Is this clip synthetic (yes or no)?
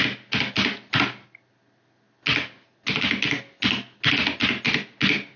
no